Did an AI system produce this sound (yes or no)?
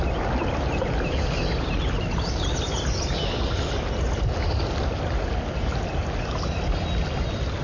no